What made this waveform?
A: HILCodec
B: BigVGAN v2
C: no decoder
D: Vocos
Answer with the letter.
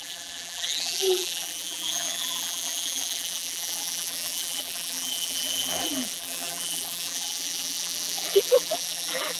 B